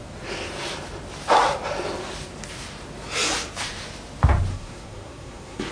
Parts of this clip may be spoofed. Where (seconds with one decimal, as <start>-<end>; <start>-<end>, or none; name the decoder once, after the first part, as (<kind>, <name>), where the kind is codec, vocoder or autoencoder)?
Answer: 4.5-5.7 (codec, SNAC)